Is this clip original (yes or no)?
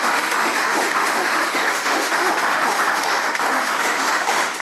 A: no